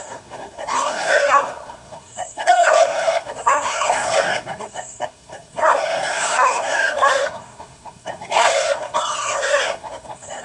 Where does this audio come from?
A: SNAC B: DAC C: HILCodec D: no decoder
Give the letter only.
A